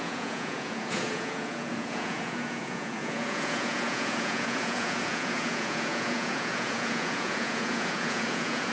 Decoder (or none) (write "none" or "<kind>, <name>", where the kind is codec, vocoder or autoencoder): vocoder, Vocos